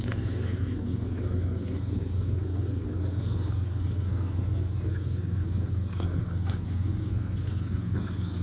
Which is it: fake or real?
fake